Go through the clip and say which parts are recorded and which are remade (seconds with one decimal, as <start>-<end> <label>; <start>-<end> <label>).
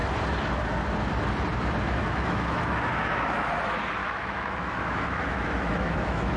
0.0-2.0 recorded; 2.0-3.5 remade; 3.5-4.0 recorded; 4.0-6.4 remade